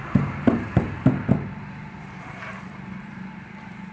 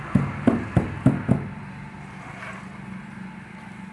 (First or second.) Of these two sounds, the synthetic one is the first